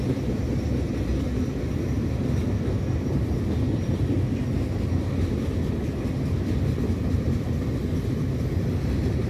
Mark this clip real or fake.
real